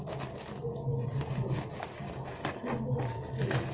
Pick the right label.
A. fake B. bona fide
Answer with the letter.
B